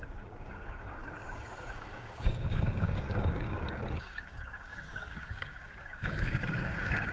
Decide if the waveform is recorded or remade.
remade